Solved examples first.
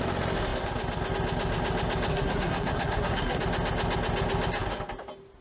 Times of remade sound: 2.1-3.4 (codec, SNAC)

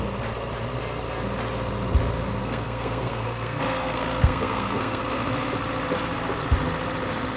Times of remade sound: 2.4-5.0 (codec, SNAC)

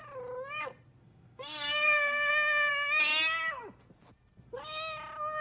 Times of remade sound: 1.0-2.3 (codec, SNAC)

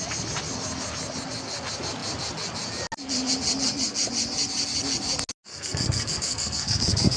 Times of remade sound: 5.5-7.2 (codec, SNAC)

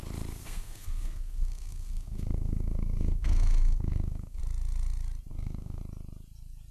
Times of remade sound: 0.4-4.4 (codec, SNAC); 5.3-5.8

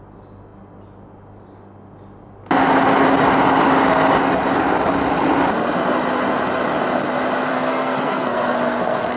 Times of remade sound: 7.5-9.2 (codec, SNAC)

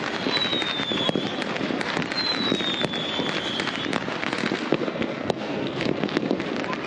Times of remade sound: 4.2-6.4 (codec, SNAC)